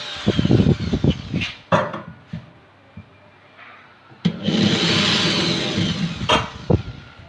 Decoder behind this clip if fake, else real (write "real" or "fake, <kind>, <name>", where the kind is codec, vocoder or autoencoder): real